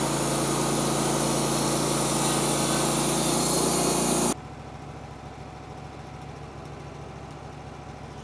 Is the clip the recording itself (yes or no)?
yes